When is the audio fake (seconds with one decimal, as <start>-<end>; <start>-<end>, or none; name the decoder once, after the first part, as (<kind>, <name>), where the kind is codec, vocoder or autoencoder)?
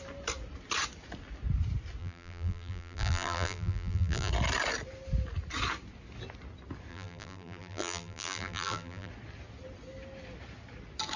2.0-4.3 (vocoder, BigVGAN v2); 6.9-9.1